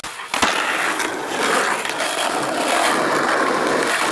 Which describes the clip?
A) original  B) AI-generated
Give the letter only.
A